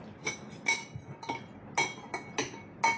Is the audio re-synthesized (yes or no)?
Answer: no